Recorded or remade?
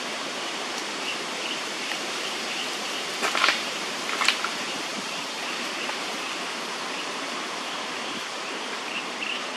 remade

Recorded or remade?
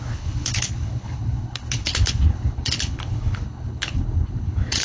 remade